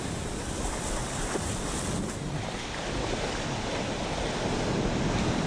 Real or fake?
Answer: real